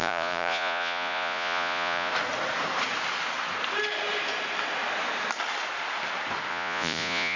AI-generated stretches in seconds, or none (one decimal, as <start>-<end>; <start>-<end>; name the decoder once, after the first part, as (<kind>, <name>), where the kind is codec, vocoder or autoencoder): 0.0-2.1 (vocoder, Vocos); 6.5-7.4